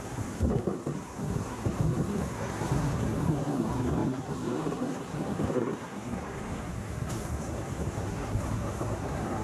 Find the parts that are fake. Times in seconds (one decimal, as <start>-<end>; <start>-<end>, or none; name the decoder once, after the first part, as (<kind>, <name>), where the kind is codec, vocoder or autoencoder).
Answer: 0.0-9.4 (codec, SNAC)